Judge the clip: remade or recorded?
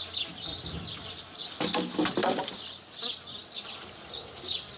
recorded